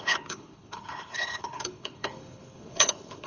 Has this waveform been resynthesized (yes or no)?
yes